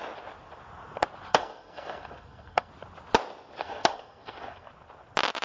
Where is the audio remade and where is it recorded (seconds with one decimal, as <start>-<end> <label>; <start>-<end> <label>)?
0.0-1.3 recorded; 1.3-2.7 remade; 2.7-3.6 recorded; 3.6-4.7 remade; 4.7-5.4 recorded